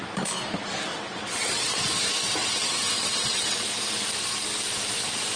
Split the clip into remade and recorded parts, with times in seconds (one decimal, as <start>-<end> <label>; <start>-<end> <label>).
0.0-0.9 recorded; 0.9-1.8 remade; 1.8-2.4 recorded; 2.4-3.8 remade; 3.8-5.4 recorded